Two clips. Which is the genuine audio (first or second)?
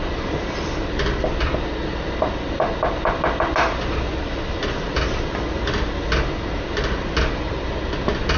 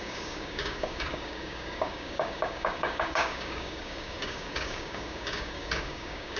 first